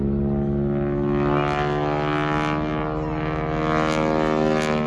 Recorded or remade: recorded